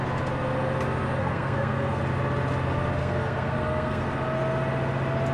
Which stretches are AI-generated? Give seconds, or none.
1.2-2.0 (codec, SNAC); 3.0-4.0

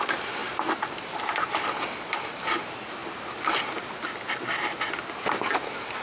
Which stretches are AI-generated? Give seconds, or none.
none